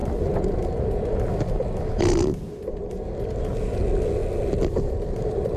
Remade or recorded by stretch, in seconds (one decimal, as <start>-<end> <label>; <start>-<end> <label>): 0.0-5.6 recorded

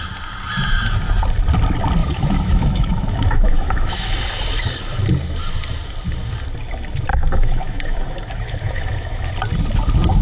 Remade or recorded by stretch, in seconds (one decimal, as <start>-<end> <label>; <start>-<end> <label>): 0.0-2.0 recorded; 2.0-4.1 remade; 4.1-7.1 recorded; 7.1-9.3 remade; 9.3-10.2 recorded

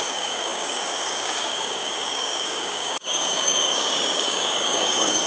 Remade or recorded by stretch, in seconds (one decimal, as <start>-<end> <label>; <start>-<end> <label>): 0.0-5.3 remade

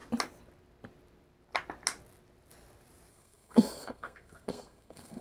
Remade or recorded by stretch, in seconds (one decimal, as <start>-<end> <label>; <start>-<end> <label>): 0.0-3.1 recorded; 3.1-5.2 remade

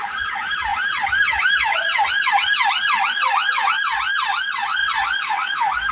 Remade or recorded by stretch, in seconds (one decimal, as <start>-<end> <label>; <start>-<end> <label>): 0.0-5.9 recorded